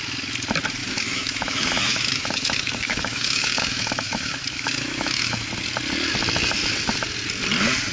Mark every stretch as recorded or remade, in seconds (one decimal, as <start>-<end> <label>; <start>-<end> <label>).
0.0-0.8 recorded; 0.8-5.5 remade; 5.5-7.9 recorded